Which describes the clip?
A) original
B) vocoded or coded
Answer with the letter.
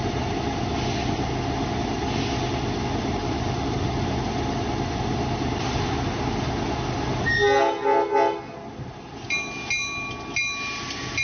A